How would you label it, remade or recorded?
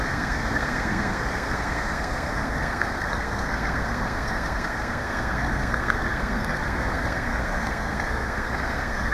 remade